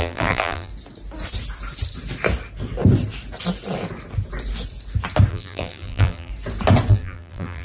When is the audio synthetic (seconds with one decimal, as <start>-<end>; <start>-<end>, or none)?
0.0-0.7; 5.3-6.3; 6.9-7.6